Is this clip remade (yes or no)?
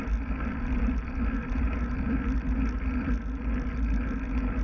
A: no